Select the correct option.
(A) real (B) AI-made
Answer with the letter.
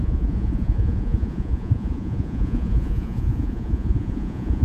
B